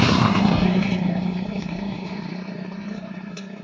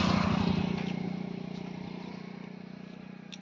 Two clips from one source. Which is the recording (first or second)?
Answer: second